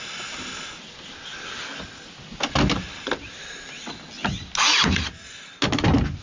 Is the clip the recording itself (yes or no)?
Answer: yes